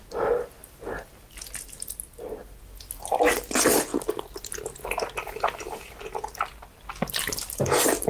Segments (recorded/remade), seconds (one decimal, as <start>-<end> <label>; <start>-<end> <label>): 0.0-8.1 recorded